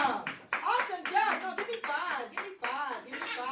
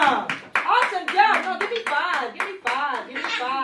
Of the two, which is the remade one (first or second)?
first